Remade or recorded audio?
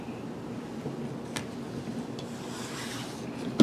recorded